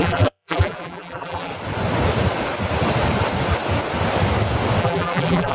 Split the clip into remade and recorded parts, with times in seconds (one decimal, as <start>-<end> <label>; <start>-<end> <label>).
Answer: 0.0-1.5 remade; 1.5-4.8 recorded; 4.8-5.5 remade

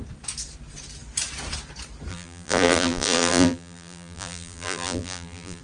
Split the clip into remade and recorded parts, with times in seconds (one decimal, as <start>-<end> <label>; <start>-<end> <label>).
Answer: 0.0-2.1 recorded; 2.1-5.6 remade

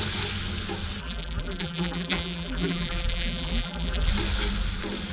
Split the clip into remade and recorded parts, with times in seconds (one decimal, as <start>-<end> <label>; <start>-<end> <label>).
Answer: 0.0-1.0 recorded; 1.0-4.1 remade; 4.1-5.1 recorded

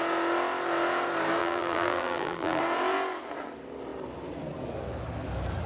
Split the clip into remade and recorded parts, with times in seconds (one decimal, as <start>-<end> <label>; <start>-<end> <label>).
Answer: 0.0-1.4 recorded; 1.4-2.6 remade; 2.6-5.7 recorded

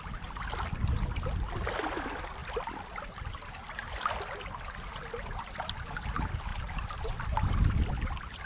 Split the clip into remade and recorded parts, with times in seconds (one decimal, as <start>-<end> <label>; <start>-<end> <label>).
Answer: 0.0-8.5 recorded

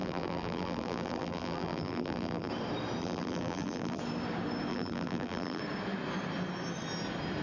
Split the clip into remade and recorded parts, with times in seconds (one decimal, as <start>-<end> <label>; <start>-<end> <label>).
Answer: 0.0-2.5 remade; 2.5-3.0 recorded; 3.0-4.0 remade; 4.0-4.7 recorded; 4.7-5.6 remade; 5.6-7.4 recorded

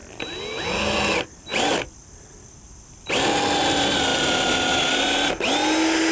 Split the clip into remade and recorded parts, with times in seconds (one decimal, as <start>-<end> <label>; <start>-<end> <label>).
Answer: 0.0-1.5 recorded; 1.5-3.1 remade; 3.1-4.1 recorded; 4.1-4.8 remade; 4.8-6.1 recorded